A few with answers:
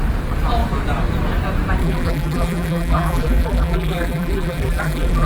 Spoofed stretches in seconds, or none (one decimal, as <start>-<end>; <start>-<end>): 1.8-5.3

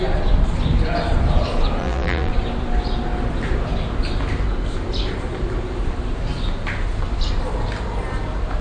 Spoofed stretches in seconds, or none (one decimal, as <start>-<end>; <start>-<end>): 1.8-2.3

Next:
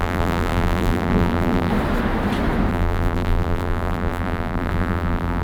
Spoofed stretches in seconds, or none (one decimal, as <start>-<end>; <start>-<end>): 0.0-1.7; 2.7-5.4